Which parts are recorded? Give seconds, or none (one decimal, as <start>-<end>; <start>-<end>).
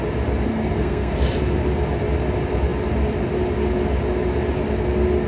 0.0-0.5; 1.1-5.3